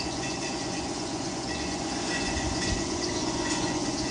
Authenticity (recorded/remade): remade